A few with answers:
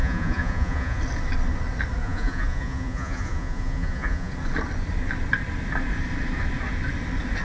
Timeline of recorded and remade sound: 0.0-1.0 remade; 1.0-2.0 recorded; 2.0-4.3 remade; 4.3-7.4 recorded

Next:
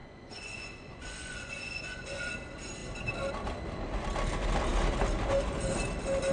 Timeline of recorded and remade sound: 0.0-2.3 remade; 2.3-6.3 recorded